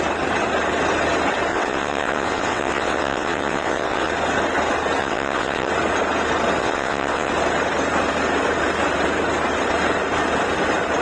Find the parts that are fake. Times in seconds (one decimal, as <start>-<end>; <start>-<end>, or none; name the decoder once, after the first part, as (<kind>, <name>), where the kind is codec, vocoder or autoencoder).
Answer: 1.5-4.1 (vocoder, WaveNeXt); 5.0-5.7; 6.6-7.3